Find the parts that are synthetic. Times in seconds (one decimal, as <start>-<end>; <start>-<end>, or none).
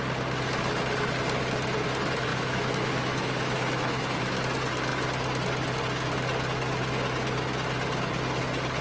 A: 2.3-4.4